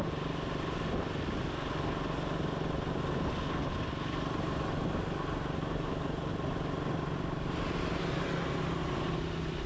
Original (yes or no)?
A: yes